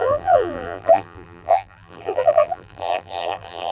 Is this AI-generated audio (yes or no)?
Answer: yes